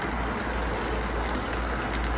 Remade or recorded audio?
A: recorded